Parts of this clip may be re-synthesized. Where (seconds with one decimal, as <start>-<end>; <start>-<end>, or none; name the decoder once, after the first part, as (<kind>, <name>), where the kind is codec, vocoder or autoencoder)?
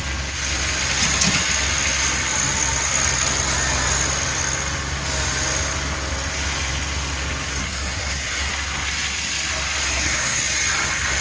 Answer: 7.6-8.5 (codec, SNAC); 9.8-10.4